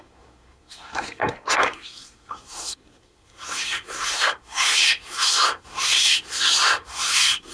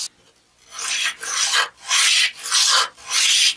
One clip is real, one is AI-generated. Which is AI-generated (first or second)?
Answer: first